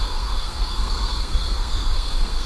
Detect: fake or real fake